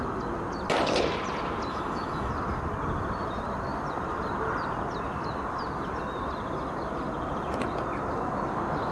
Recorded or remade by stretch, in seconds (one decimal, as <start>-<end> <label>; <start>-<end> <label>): 0.0-1.7 recorded; 1.7-2.3 remade; 2.3-8.9 recorded

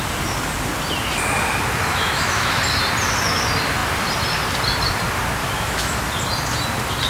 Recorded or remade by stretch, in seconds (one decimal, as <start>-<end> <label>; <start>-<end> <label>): 0.0-1.9 recorded; 1.9-2.6 remade; 2.6-5.4 recorded; 5.4-6.1 remade; 6.1-7.1 recorded

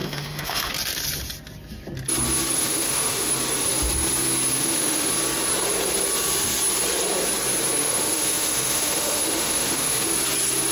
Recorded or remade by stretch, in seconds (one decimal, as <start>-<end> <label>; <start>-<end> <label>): 0.0-0.7 remade; 0.7-2.6 recorded; 2.6-3.3 remade; 3.3-4.5 recorded; 4.5-5.1 remade; 5.1-7.8 recorded; 7.8-10.1 remade; 10.1-10.7 recorded

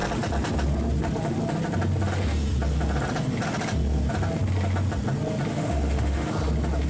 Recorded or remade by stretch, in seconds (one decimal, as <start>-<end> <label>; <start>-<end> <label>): 0.0-5.5 recorded; 5.5-6.3 remade; 6.3-6.9 recorded

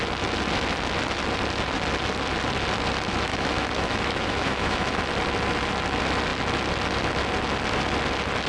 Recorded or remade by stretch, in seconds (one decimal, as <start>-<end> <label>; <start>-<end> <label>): 0.0-3.3 recorded; 3.3-5.0 remade; 5.0-8.5 recorded

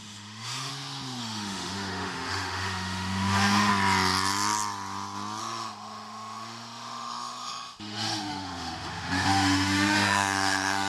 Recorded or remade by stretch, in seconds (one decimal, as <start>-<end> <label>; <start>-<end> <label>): 0.0-0.7 remade; 0.7-1.2 recorded; 1.2-3.7 remade; 3.7-5.4 recorded; 5.4-10.9 remade